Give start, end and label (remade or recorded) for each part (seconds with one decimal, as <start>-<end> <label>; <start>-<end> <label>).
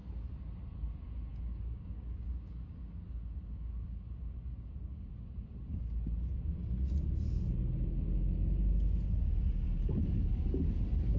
0.0-1.3 recorded; 1.3-5.1 remade; 5.1-11.2 recorded